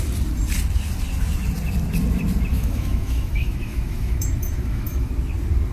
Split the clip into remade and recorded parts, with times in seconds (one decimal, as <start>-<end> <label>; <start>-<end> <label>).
0.0-2.5 recorded; 2.5-5.1 remade; 5.1-5.7 recorded